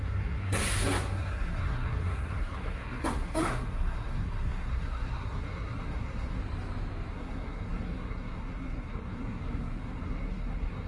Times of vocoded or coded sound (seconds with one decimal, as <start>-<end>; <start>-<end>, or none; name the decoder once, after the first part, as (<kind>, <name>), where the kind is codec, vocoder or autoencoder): 0.0-6.4 (codec, SNAC); 7.1-10.9